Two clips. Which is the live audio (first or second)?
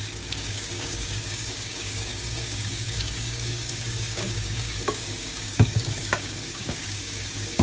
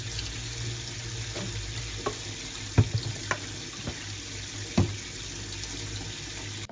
second